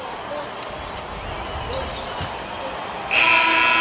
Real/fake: real